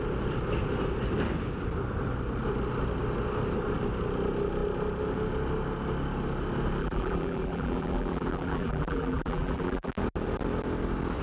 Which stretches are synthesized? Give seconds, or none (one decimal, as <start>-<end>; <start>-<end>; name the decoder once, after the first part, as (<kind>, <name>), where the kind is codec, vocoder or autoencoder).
6.8-9.9 (vocoder, BigVGAN v2)